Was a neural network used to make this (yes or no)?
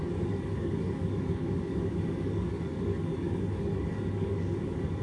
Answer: yes